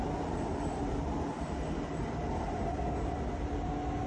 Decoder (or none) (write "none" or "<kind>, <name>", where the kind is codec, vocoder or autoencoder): none